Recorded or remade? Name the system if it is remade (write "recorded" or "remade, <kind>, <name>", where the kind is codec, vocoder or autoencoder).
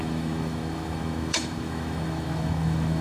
remade, autoencoder, DAC-VAE